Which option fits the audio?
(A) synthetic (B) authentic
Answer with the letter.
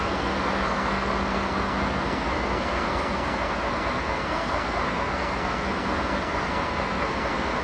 A